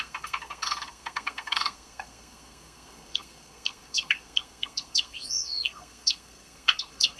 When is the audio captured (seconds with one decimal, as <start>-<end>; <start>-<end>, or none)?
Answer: none